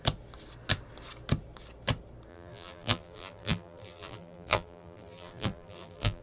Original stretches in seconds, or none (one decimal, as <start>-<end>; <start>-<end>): 0.0-2.3